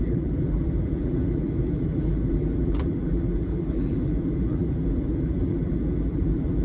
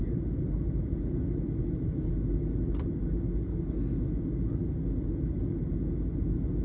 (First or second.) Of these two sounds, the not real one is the first